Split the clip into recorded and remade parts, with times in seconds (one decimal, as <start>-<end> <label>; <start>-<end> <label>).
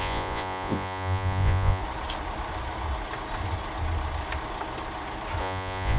0.0-1.8 remade; 1.8-5.4 recorded; 5.4-6.0 remade